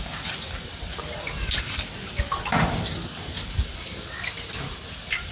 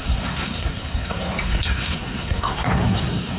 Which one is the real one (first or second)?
first